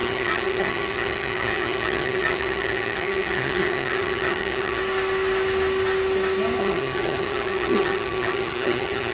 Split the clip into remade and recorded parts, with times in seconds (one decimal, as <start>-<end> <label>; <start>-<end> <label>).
0.0-4.8 remade; 4.8-6.6 recorded; 6.6-9.1 remade